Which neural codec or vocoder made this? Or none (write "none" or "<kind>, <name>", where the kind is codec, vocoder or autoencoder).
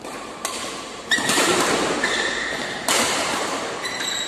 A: vocoder, BigVGAN v2